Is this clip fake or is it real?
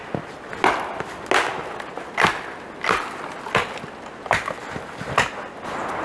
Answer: real